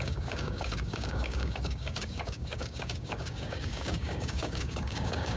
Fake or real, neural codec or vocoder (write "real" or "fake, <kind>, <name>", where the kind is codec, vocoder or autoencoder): fake, codec, DAC